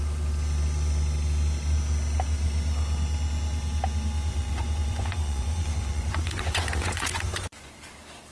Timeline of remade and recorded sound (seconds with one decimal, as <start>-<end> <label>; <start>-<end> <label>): 0.0-4.3 recorded; 4.3-7.7 remade; 7.7-8.3 recorded